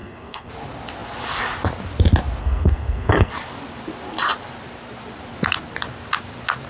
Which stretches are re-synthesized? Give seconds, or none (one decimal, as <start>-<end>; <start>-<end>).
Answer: 0.0-0.5; 2.4-3.3